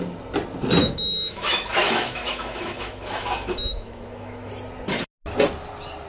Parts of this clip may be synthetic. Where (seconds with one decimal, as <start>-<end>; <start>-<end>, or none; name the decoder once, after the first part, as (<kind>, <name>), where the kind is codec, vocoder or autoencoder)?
0.8-4.5 (autoencoder, DAC-VAE)